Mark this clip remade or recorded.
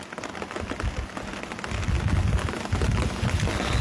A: recorded